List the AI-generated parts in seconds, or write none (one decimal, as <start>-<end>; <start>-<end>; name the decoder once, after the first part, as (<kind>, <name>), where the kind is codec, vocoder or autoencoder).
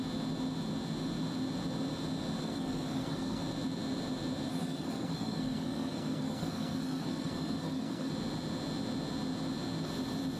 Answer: 2.4-3.4 (codec, SNAC); 4.5-8.1